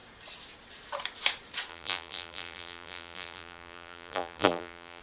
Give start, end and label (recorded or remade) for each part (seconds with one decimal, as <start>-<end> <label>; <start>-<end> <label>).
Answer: 0.0-1.7 recorded; 1.7-5.0 remade